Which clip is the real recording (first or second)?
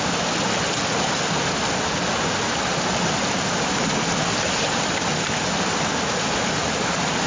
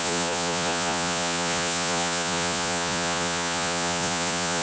first